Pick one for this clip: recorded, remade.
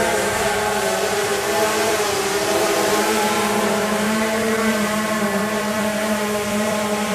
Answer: remade